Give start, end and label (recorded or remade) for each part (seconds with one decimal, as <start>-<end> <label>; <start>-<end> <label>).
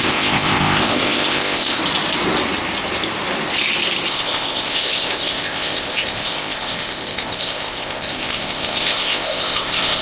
0.0-1.8 remade; 1.8-4.1 recorded; 4.1-10.0 remade